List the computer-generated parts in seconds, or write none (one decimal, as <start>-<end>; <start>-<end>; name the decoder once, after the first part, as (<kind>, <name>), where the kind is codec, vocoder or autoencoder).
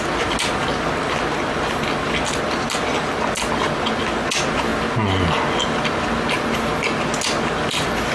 none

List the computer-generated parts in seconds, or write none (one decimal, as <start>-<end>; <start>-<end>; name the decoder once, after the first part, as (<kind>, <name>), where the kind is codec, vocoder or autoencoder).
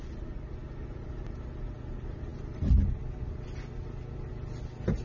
none